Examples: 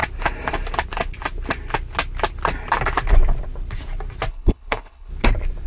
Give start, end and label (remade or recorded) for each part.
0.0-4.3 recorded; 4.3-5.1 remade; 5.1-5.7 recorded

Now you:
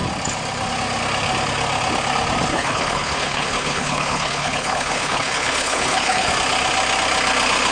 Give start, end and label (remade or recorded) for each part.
0.0-2.5 recorded; 2.5-6.3 remade; 6.3-7.7 recorded